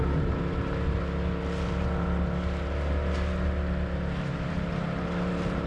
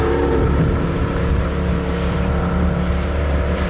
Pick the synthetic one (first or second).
second